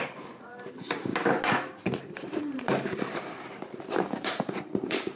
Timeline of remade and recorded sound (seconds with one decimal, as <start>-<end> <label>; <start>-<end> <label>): 0.0-1.1 remade; 1.1-2.2 recorded; 2.2-5.2 remade